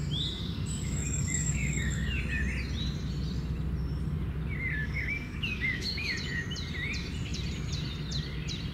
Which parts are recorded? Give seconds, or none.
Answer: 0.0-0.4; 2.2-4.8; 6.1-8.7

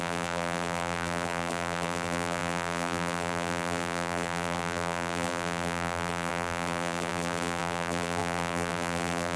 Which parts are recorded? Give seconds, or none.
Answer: none

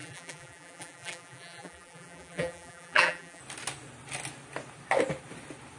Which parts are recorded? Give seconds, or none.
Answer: 3.4-5.8

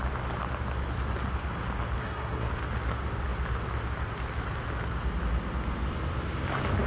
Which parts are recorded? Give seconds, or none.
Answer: 0.0-2.0; 2.5-6.9

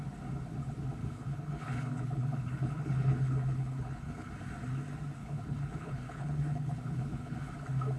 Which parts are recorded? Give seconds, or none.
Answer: 0.0-1.0; 4.3-5.2; 7.5-8.0

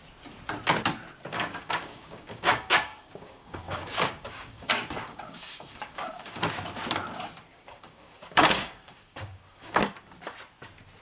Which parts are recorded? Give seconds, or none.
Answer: 0.0-1.3; 6.4-7.5; 9.8-11.0